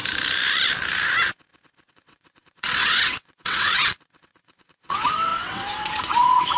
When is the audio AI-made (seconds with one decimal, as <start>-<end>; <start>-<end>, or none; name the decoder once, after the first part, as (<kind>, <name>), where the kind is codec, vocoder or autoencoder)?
1.9-6.6 (vocoder, WaveNeXt)